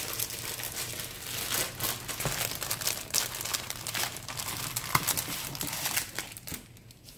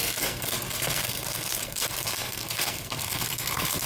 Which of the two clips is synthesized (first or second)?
second